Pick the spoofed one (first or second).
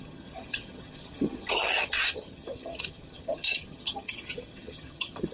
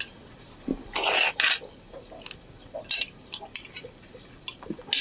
first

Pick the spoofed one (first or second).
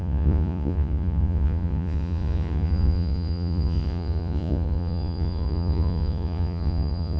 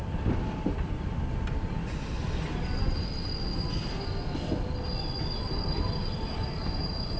first